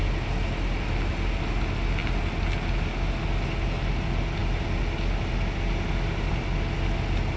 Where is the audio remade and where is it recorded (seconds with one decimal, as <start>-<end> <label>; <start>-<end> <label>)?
0.0-7.4 recorded